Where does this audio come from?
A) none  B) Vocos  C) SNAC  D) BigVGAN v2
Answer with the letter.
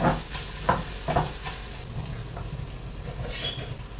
A